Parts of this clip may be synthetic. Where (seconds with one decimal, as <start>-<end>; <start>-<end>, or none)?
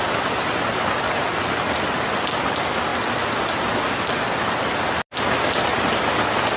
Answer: none